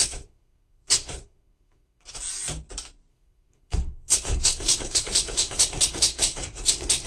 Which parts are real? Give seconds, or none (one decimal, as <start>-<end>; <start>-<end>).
2.2-3.1